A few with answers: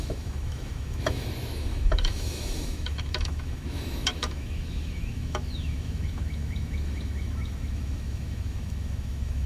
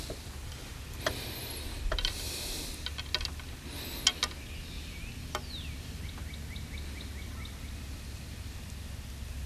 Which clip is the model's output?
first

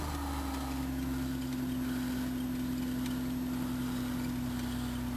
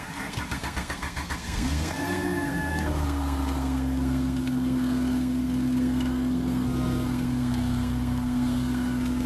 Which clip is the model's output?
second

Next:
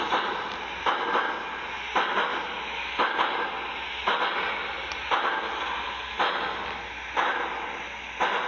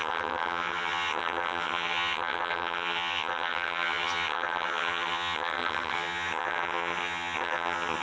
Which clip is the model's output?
second